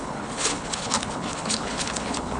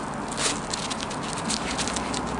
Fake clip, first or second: first